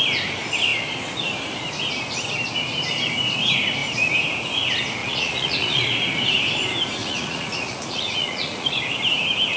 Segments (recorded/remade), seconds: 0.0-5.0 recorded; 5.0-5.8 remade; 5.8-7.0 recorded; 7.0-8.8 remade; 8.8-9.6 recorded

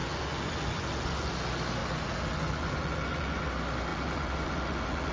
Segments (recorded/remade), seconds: 0.0-1.3 remade; 1.3-1.8 recorded; 1.8-3.5 remade; 3.5-3.9 recorded; 3.9-5.1 remade